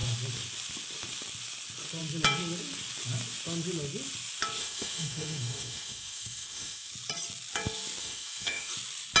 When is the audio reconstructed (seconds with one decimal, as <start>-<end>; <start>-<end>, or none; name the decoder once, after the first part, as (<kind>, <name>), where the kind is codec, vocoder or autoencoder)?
4.6-6.9 (autoencoder, DAC-VAE); 8.0-8.7